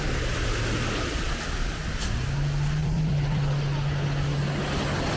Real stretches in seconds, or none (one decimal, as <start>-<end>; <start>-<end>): 0.0-2.8; 3.5-5.2